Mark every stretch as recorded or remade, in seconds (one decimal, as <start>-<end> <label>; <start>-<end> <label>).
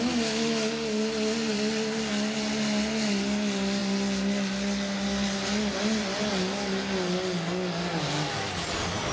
0.0-9.1 recorded